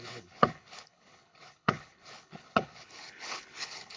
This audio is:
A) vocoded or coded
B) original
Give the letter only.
A